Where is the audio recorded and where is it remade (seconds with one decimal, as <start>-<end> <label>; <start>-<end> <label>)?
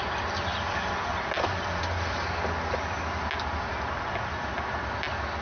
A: 0.0-5.4 recorded